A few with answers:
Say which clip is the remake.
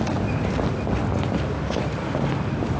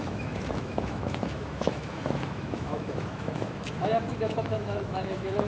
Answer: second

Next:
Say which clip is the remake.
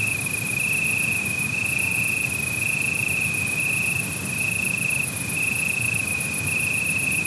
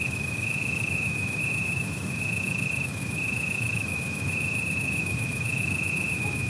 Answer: second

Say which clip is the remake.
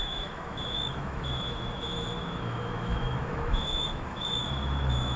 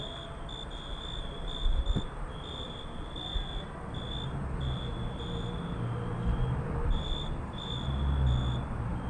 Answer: first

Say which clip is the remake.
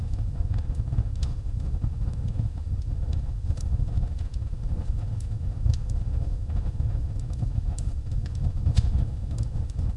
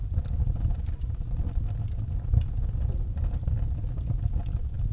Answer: first